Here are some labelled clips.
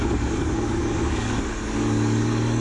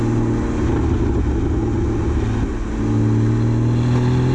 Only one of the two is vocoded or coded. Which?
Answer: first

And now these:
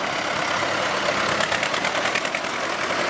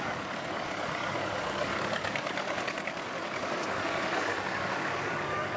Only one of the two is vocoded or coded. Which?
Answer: second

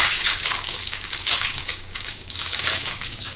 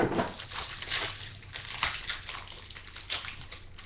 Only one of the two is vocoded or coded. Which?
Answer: first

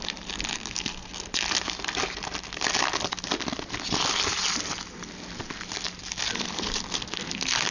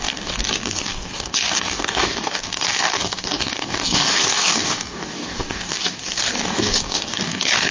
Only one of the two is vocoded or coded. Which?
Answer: second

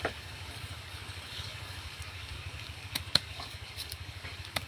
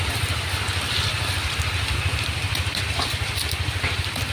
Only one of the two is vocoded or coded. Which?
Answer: first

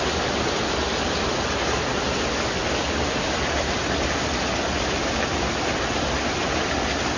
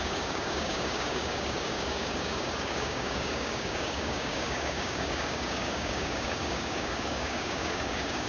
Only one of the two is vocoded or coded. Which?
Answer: second